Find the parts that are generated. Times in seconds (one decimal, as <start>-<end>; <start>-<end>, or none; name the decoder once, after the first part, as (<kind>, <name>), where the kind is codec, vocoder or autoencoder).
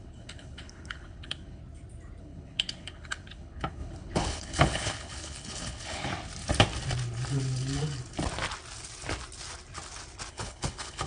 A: 0.0-1.6 (codec, HILCodec); 2.2-6.1; 10.3-11.1